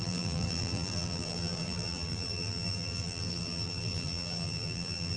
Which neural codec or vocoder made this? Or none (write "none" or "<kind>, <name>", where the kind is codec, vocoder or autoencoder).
vocoder, BigVGAN v2